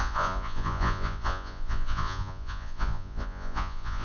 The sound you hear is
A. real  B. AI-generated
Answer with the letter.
B